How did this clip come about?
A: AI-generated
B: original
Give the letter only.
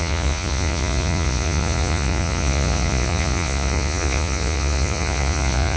A